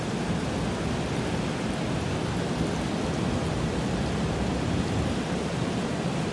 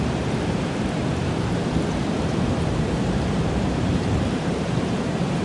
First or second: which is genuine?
first